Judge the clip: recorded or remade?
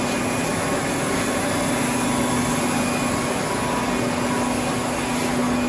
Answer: recorded